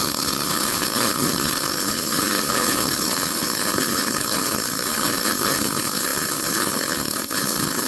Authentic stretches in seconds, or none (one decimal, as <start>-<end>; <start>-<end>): none